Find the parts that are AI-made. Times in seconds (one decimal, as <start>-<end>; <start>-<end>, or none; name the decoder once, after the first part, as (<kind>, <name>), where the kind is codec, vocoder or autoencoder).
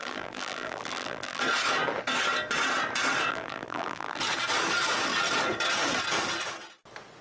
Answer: 0.0-1.4 (vocoder, BigVGAN v2); 3.3-4.2